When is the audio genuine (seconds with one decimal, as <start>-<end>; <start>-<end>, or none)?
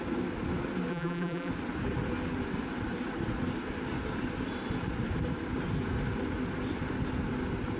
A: 0.0-0.9; 1.5-7.8